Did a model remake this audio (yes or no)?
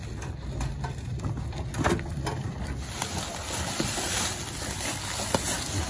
no